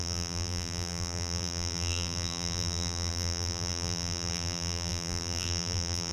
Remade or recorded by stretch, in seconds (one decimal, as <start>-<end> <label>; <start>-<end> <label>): 0.0-6.1 remade

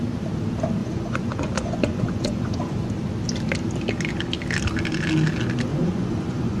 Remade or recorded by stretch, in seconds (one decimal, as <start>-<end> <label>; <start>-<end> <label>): 0.0-0.8 recorded; 0.8-2.9 remade; 2.9-5.7 recorded; 5.7-6.6 remade

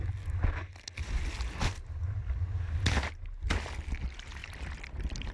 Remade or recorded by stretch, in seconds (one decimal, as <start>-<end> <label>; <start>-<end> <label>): 0.0-4.4 recorded; 4.4-5.3 remade

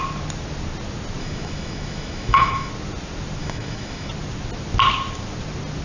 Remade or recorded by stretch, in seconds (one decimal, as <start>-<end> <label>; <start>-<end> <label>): 0.0-1.2 recorded; 1.2-2.7 remade; 2.7-3.4 recorded; 3.4-4.1 remade; 4.1-5.8 recorded

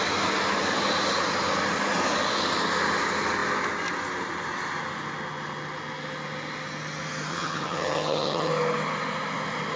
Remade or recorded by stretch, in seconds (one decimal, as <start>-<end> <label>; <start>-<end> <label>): 0.0-7.3 recorded; 7.3-8.5 remade; 8.5-9.8 recorded

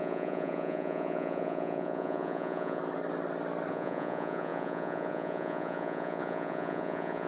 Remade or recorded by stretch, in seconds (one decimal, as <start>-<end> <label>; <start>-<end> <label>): 0.0-2.8 remade; 2.8-3.7 recorded; 3.7-7.3 remade

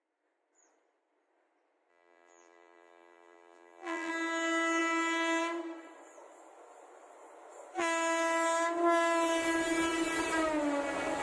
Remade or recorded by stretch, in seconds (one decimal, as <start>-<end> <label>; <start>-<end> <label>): 0.0-1.9 recorded; 1.9-4.1 remade; 4.1-11.2 recorded

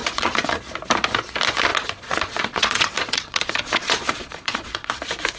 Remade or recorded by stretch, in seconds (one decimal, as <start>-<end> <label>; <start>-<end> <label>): 0.0-0.6 remade; 0.6-1.7 recorded; 1.7-4.9 remade; 4.9-5.4 recorded